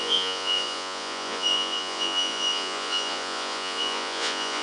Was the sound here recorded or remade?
remade